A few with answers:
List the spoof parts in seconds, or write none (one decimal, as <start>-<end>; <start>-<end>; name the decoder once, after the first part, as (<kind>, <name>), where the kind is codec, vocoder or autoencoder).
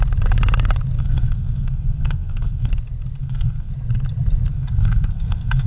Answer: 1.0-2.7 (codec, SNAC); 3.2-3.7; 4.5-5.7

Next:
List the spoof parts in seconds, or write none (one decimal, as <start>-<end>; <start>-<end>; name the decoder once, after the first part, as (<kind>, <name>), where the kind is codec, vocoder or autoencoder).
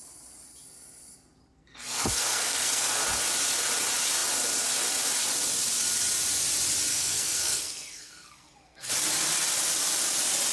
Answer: 1.4-3.0 (codec, SNAC); 6.9-8.9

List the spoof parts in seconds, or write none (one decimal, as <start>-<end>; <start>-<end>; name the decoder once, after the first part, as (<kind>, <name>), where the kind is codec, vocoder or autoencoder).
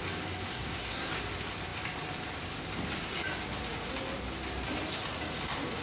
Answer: 0.5-1.1 (codec, SNAC)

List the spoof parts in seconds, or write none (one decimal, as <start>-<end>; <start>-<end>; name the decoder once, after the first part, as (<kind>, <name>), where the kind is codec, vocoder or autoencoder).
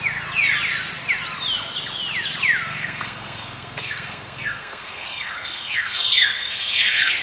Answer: 2.7-7.2 (codec, SNAC)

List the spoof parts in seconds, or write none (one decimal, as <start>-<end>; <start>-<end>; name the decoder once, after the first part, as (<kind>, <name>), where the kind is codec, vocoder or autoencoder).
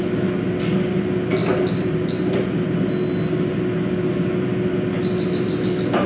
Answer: none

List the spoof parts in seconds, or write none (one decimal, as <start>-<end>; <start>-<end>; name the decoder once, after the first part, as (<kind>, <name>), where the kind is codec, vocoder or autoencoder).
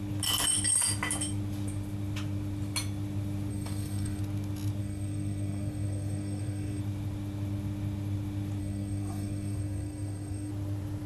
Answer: 3.5-4.2 (codec, SNAC); 4.8-6.8; 8.6-10.5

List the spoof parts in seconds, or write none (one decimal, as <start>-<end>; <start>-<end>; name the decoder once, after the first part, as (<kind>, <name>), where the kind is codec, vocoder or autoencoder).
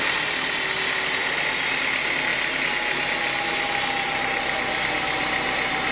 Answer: none